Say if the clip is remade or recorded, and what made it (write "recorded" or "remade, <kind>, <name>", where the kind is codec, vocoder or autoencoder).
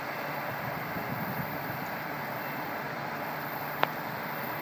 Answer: remade, vocoder, BigVGAN v2